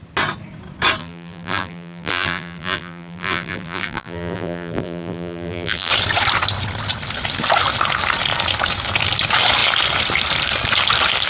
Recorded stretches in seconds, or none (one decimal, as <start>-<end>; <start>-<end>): 0.0-1.0; 5.9-11.3